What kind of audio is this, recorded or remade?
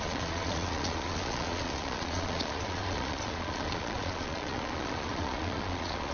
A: remade